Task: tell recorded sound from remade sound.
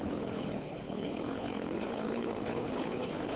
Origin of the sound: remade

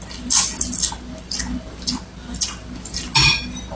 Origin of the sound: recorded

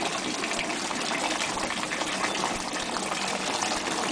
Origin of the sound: recorded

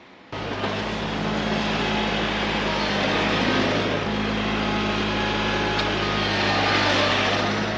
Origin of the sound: recorded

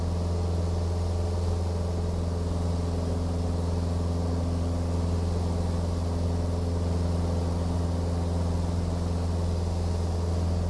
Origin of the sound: recorded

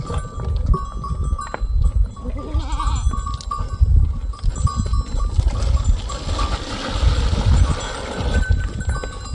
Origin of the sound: recorded